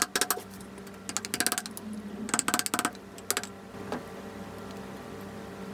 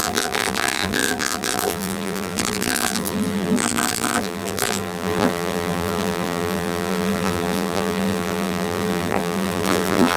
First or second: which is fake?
second